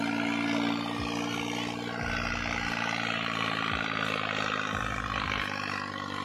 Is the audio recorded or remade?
recorded